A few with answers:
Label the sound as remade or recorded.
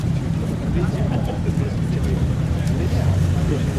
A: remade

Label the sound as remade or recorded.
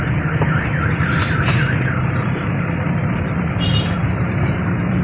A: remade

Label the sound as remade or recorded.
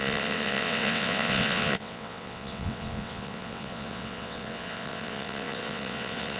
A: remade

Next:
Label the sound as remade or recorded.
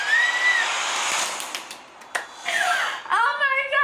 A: recorded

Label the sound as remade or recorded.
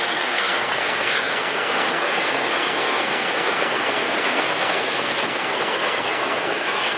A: remade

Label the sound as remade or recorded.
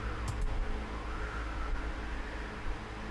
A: recorded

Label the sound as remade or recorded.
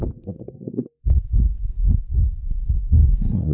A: remade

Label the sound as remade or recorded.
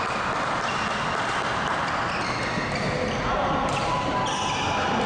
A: recorded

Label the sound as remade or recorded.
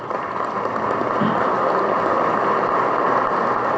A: recorded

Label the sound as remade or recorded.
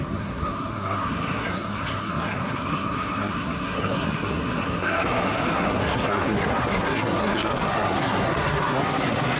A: remade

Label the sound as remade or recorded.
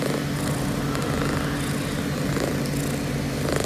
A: recorded